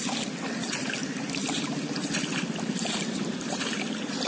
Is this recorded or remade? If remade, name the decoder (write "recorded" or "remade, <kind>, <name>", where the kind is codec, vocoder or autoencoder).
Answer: recorded